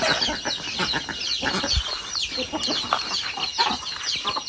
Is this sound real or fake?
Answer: real